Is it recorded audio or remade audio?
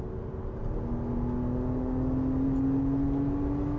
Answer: recorded